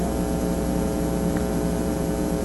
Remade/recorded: recorded